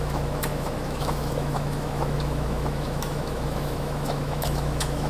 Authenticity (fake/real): fake